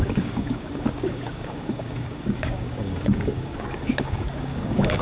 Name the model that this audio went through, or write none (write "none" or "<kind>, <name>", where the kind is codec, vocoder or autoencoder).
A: codec, DAC